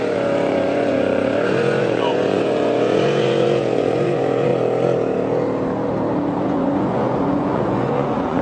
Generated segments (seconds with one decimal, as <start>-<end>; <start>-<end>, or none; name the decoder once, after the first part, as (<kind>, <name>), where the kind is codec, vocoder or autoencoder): 0.0-4.5 (vocoder, Vocos); 6.4-8.4